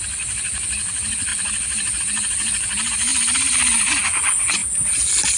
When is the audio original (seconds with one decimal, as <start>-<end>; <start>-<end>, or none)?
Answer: 0.0-1.3; 2.0-3.1; 3.9-5.4